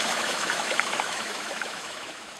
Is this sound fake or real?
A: fake